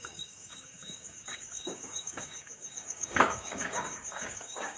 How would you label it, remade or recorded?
remade